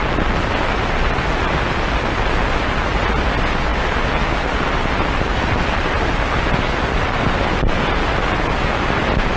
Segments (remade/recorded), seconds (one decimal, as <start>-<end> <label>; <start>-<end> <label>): 0.0-5.3 recorded; 5.3-6.4 remade; 6.4-9.4 recorded